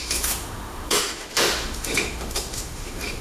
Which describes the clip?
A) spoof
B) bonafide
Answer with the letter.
A